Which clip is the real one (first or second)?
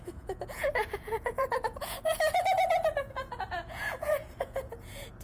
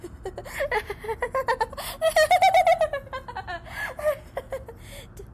second